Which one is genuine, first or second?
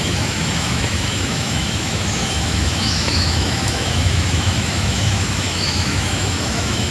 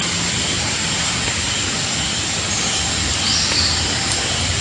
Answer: second